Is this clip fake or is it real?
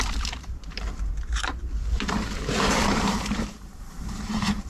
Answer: fake